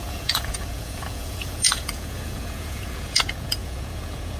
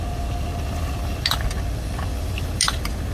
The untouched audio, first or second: second